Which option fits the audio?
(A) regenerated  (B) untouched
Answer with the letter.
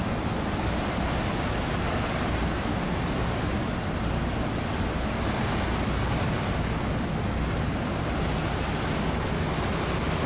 B